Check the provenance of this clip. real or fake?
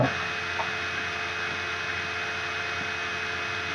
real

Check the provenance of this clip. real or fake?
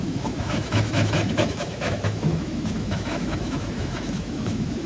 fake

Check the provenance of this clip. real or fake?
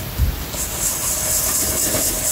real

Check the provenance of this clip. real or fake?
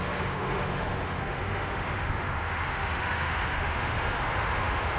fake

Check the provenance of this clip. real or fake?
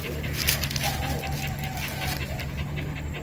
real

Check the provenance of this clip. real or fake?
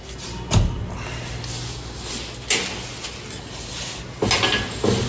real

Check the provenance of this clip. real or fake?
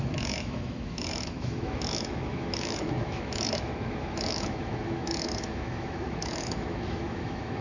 fake